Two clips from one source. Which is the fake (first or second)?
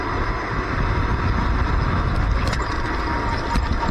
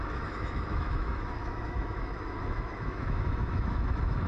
second